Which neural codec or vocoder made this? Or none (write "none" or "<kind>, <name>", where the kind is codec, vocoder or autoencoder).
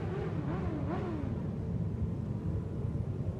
none